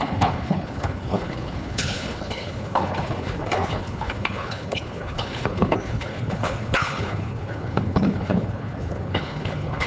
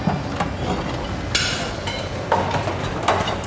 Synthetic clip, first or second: first